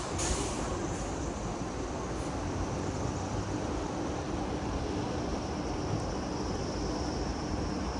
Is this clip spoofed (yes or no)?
no